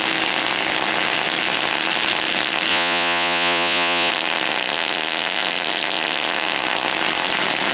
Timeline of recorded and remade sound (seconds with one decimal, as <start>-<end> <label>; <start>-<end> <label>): 0.0-2.7 recorded; 2.7-4.1 remade; 4.1-7.7 recorded